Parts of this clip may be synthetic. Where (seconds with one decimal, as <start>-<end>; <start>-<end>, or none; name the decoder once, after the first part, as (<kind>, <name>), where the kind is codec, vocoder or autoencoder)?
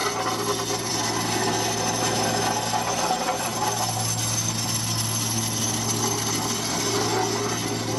none